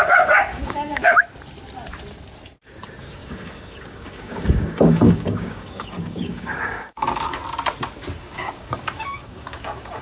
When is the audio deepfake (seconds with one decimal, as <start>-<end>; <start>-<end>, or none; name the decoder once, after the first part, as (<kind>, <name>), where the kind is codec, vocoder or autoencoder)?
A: 0.0-1.2 (codec, DAC); 3.0-7.4; 8.2-10.0